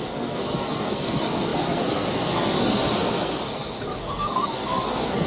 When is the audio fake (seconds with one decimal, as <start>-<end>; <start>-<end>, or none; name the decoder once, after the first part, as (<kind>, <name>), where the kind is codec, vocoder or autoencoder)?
0.0-5.3 (codec, SNAC)